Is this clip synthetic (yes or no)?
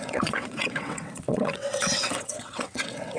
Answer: yes